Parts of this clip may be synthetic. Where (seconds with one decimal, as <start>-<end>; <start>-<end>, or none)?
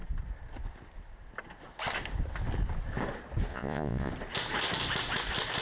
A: 3.5-4.1